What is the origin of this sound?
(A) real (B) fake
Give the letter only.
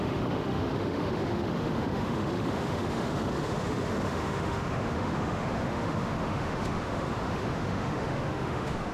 B